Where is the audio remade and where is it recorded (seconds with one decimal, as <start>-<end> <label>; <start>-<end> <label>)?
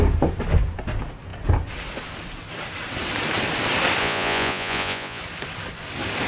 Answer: 0.0-4.0 recorded; 4.0-5.2 remade; 5.2-6.3 recorded